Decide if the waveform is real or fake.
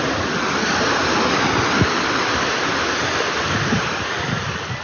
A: real